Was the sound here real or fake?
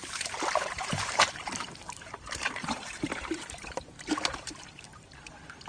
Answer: fake